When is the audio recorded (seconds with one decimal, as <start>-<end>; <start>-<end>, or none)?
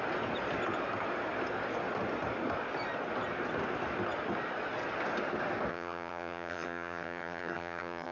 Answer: 0.0-5.7